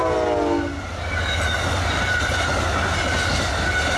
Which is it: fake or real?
real